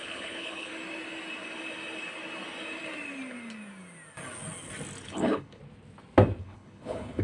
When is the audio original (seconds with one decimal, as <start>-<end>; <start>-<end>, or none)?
0.7-5.0; 5.6-6.4